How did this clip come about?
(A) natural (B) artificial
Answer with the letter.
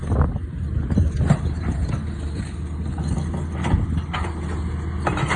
A